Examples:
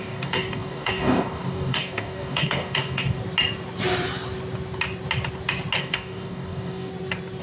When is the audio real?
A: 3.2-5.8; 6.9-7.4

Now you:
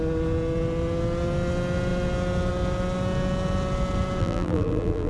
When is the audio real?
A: 0.0-4.2

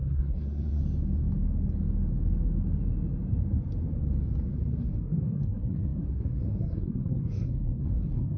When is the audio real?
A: 0.8-4.6

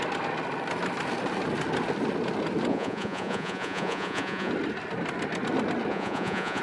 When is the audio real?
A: 0.0-2.7; 4.5-5.9